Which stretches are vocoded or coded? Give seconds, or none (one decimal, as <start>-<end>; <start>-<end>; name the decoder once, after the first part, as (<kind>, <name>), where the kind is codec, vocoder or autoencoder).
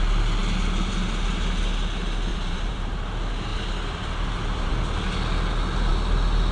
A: 2.3-3.0 (vocoder, BigVGAN v2); 3.5-4.7